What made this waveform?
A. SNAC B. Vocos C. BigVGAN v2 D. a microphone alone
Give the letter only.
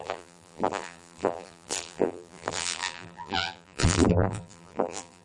C